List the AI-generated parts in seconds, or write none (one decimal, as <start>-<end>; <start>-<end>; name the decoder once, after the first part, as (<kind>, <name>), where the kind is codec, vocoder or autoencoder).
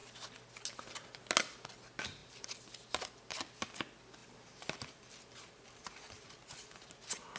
2.2-2.9 (vocoder, BigVGAN v2); 4.2-6.9